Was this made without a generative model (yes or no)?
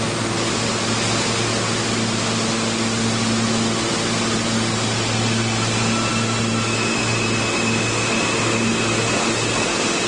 yes